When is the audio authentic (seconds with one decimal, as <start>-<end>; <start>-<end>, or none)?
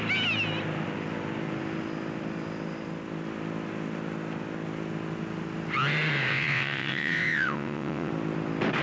0.0-6.3; 8.1-8.8